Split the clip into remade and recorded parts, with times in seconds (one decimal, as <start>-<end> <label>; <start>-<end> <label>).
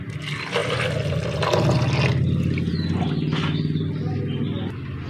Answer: 0.0-5.1 recorded